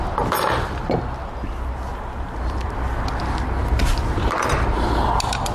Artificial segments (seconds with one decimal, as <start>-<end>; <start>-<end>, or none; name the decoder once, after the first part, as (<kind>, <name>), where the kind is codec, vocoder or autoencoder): 1.9-2.8 (vocoder, BigVGAN v2); 3.6-5.0